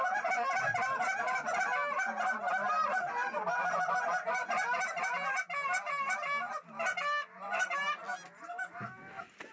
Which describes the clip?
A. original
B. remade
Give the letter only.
A